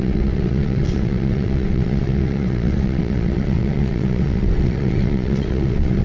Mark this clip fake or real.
fake